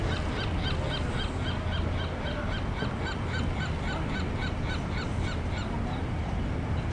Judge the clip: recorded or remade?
recorded